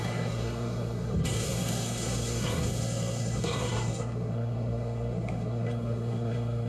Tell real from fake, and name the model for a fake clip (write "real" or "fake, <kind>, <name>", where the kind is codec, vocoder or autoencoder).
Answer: fake, codec, SNAC